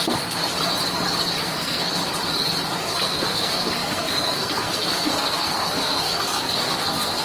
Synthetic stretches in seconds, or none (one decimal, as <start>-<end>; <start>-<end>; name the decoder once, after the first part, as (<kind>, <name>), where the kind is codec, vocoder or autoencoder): 0.0-0.4 (codec, SNAC); 1.4-2.0; 2.8-7.2